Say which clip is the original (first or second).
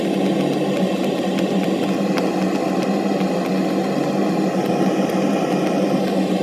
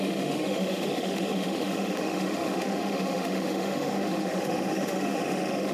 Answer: first